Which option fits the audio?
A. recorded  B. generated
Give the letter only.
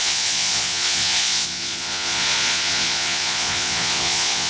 B